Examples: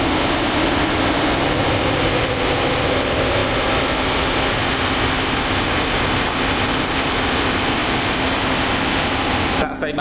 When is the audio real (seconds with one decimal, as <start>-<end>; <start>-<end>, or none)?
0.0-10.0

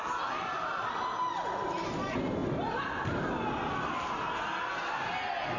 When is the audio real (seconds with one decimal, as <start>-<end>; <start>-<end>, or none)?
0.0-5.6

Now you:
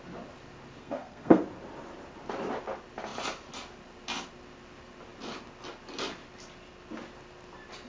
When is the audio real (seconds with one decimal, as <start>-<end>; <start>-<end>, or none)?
0.0-0.8; 1.4-7.9